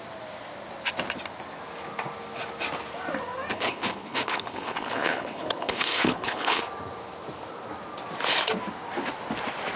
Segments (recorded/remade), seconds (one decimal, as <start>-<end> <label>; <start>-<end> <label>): 0.0-3.5 recorded; 3.5-6.6 remade; 6.6-9.8 recorded